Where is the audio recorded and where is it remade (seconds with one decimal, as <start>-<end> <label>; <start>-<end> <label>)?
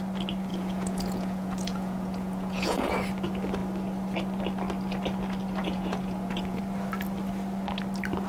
0.0-0.5 recorded; 0.5-2.9 remade; 2.9-5.6 recorded; 5.6-6.6 remade; 6.6-8.3 recorded